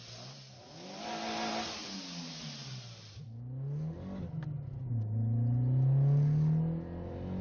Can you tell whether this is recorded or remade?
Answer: recorded